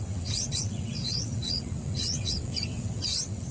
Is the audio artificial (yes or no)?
yes